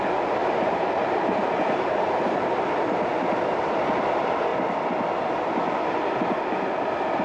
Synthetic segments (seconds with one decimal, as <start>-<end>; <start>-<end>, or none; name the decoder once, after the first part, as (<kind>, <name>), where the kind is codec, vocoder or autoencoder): 0.4-2.3 (vocoder, BigVGAN v2)